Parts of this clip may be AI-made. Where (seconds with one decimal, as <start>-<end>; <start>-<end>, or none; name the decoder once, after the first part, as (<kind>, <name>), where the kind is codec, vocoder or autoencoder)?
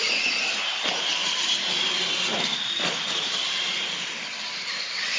none